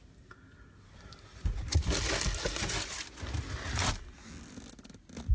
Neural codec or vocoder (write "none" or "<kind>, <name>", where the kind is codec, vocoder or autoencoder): none